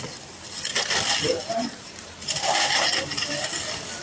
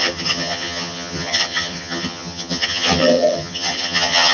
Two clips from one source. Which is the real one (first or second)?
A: first